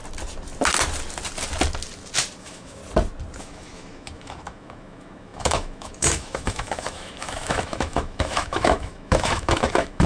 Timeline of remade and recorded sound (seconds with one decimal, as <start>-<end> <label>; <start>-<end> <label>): 0.0-2.4 recorded; 2.4-2.8 remade; 2.8-3.4 recorded; 3.4-10.1 remade